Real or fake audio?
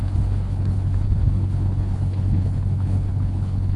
fake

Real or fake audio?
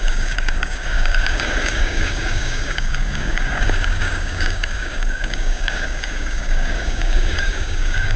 fake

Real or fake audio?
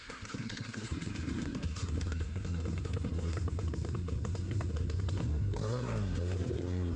fake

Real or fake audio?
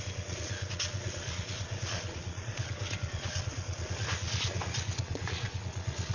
fake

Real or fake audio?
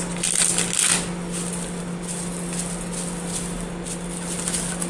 real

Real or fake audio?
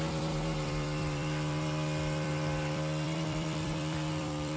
fake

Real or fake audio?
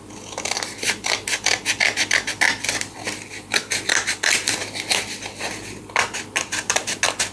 real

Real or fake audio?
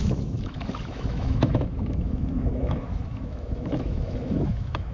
fake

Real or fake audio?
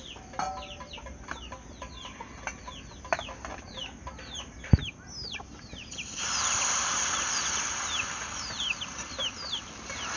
real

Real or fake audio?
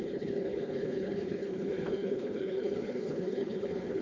fake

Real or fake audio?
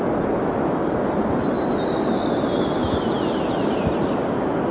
real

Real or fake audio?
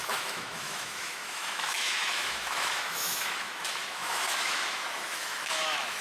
fake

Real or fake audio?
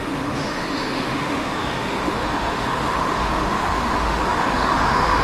fake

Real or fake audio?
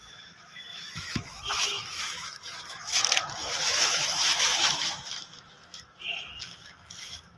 fake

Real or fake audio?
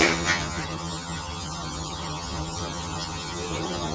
fake